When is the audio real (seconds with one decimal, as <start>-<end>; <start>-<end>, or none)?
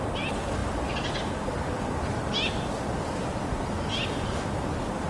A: 0.0-5.1